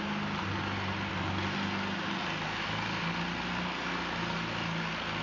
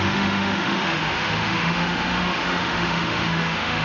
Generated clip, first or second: second